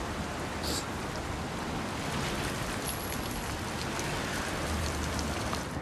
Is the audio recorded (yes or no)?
no